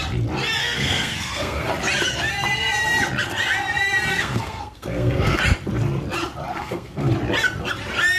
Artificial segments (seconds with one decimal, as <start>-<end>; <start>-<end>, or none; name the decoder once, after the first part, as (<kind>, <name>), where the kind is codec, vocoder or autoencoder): 0.6-1.7 (codec, SNAC); 4.1-5.4; 6.5-7.1